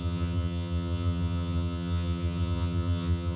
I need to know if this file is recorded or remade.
remade